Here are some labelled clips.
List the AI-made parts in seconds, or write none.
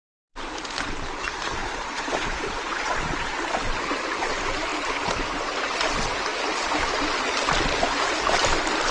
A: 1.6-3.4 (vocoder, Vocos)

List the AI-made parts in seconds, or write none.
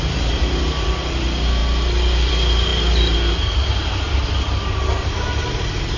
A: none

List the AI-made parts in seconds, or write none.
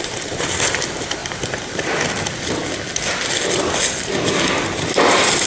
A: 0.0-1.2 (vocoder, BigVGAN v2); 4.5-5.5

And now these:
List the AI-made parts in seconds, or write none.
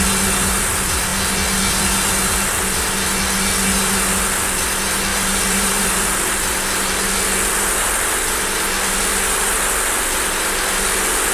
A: 5.1-6.3 (vocoder, BigVGAN v2)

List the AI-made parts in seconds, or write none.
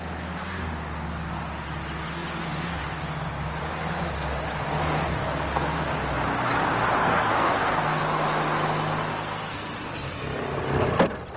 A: 7.0-8.0 (codec, SNAC); 9.1-9.7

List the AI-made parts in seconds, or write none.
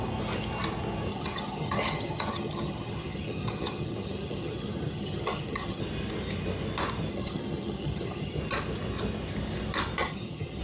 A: 1.1-5.8 (vocoder, HiFi-GAN); 7.1-8.4; 10.0-10.6